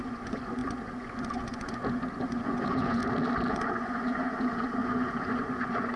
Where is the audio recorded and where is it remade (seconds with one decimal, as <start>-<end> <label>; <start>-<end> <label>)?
0.0-3.0 remade; 3.0-3.5 recorded; 3.5-6.0 remade